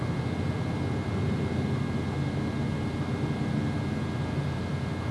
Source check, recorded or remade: recorded